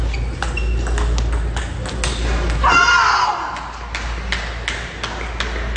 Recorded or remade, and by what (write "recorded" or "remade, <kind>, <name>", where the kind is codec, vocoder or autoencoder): recorded